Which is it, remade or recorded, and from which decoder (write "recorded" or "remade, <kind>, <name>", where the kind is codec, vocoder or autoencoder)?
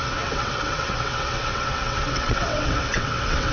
remade, vocoder, WaveNeXt